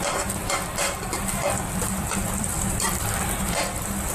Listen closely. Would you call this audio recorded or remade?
remade